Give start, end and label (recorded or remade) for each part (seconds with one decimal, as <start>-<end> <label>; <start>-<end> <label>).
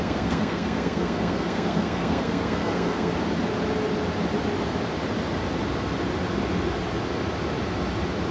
0.0-3.1 remade; 3.1-8.3 recorded